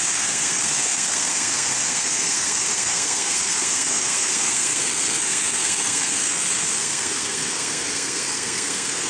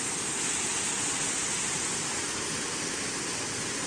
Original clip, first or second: second